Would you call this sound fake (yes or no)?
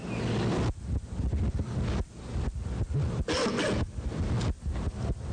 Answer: no